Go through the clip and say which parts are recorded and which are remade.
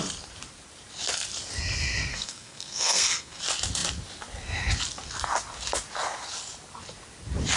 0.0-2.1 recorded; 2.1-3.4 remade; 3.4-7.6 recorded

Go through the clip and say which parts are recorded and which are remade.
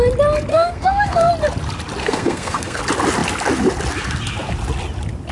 0.0-0.5 recorded; 0.5-1.3 remade; 1.3-2.0 recorded; 2.0-2.8 remade; 2.8-5.3 recorded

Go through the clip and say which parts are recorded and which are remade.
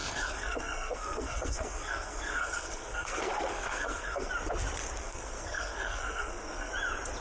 0.0-4.3 remade; 4.3-5.0 recorded; 5.0-6.7 remade; 6.7-7.2 recorded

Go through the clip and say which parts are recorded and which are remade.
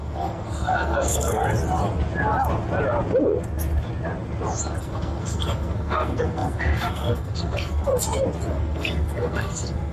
0.0-1.4 remade; 1.4-4.8 recorded; 4.8-7.9 remade; 7.9-8.5 recorded; 8.5-9.9 remade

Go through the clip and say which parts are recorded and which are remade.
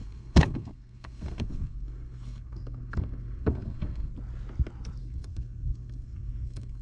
0.0-4.1 remade; 4.1-5.0 recorded; 5.0-6.8 remade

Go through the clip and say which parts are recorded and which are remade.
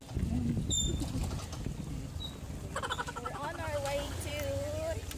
0.0-5.2 recorded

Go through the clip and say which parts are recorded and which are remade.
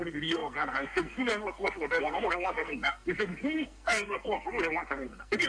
0.0-5.5 remade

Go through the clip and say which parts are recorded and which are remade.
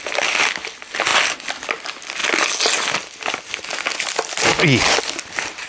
0.0-5.7 recorded